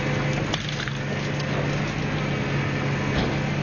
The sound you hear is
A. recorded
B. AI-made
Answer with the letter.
A